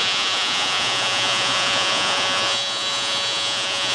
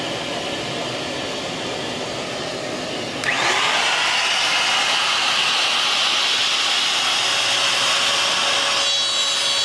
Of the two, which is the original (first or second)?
second